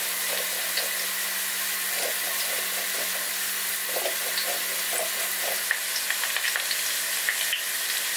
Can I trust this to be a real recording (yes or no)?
yes